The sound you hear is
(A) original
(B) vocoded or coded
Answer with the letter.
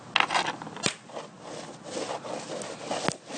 A